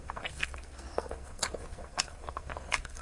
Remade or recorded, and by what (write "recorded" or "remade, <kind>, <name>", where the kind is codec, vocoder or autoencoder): remade, codec, SNAC